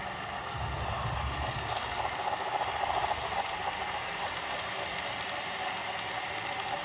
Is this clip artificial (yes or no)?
no